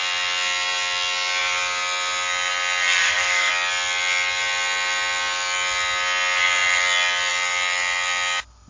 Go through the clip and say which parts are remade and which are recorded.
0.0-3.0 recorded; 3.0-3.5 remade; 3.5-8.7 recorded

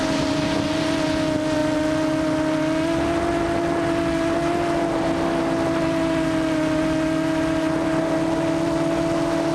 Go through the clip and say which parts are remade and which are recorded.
0.0-9.5 recorded

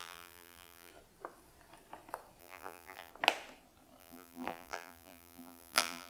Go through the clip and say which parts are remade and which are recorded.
0.0-0.9 remade; 0.9-2.4 recorded; 2.4-3.1 remade; 3.1-4.0 recorded; 4.0-6.1 remade

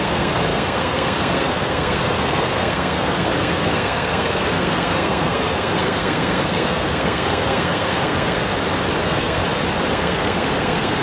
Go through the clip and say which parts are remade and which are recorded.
0.0-8.5 remade; 8.5-9.0 recorded; 9.0-9.4 remade; 9.4-9.9 recorded; 9.9-11.0 remade

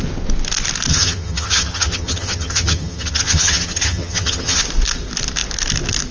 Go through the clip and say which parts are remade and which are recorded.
0.0-0.9 recorded; 0.9-4.6 remade; 4.6-6.1 recorded

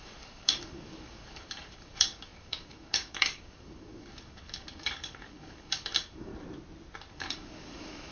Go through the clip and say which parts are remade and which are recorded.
0.0-6.3 remade; 6.3-7.1 recorded; 7.1-8.1 remade

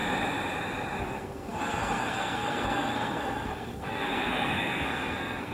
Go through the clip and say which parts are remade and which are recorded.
0.0-1.0 recorded; 1.0-5.5 remade